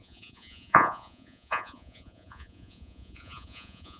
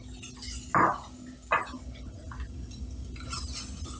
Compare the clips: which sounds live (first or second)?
second